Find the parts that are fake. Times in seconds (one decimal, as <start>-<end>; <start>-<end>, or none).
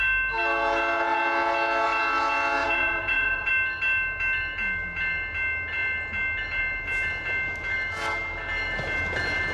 2.6-3.5